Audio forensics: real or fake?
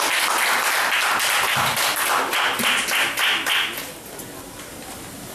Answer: real